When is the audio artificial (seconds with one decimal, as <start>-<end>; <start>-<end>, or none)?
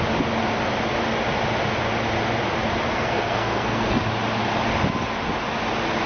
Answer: 2.9-4.0